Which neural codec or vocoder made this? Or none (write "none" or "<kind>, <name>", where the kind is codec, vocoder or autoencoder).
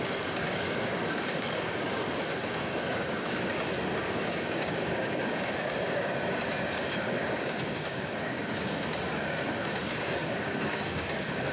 codec, DAC